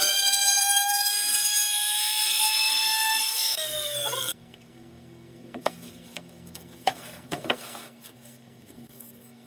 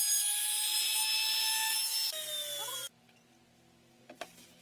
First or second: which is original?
second